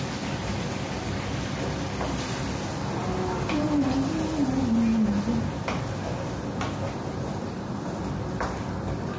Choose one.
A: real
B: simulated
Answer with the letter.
A